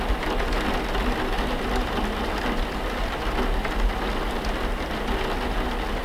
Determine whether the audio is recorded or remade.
recorded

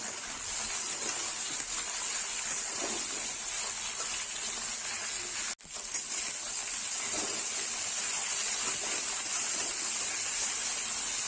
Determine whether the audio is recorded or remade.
recorded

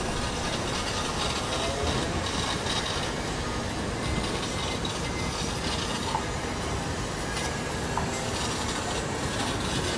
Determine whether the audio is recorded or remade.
recorded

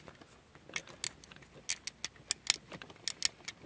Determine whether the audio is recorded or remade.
recorded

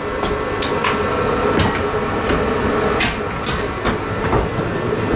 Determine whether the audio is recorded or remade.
recorded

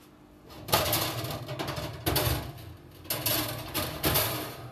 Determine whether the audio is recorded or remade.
recorded